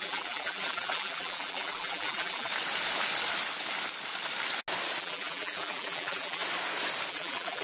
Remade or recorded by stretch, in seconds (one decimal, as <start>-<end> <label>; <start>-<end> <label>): 0.0-2.5 remade; 2.5-5.0 recorded; 5.0-6.4 remade; 6.4-7.1 recorded; 7.1-7.6 remade